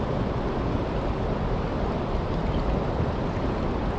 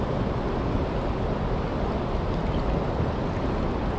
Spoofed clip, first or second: first